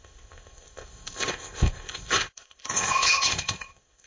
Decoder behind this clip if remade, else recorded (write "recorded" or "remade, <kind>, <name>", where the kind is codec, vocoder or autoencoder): remade, codec, ZipCodec